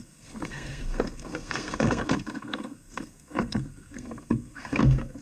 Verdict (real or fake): fake